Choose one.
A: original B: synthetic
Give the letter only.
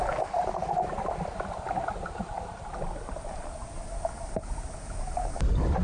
A